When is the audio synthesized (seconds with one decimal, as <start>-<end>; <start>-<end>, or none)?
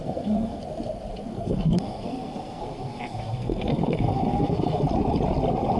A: 0.0-0.6; 1.3-4.8